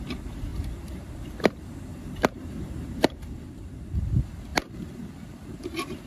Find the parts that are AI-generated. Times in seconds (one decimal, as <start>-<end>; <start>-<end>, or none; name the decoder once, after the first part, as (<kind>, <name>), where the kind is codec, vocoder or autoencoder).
0.5-1.1 (vocoder, BigVGAN v2); 1.9-4.1